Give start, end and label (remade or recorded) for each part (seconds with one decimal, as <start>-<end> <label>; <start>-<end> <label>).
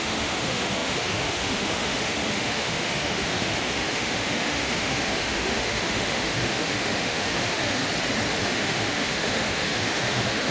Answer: 0.0-7.8 remade; 7.8-8.4 recorded; 8.4-10.5 remade